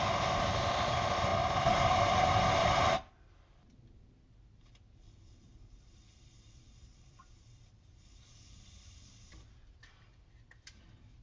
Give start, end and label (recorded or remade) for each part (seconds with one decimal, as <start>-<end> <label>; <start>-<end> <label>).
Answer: 0.0-11.2 remade